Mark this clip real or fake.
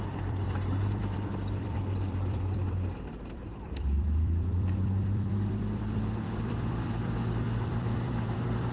fake